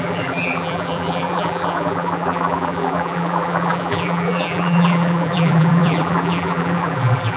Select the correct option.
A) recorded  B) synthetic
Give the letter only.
B